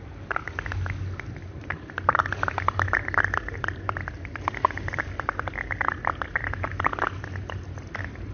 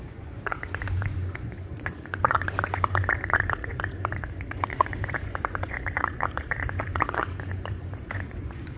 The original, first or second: first